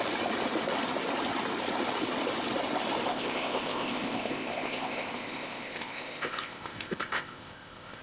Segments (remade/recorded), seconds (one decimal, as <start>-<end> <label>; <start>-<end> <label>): 0.0-3.1 recorded; 3.1-8.0 remade